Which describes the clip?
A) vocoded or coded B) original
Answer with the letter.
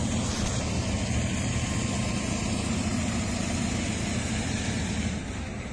A